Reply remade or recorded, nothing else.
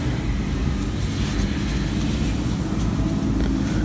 recorded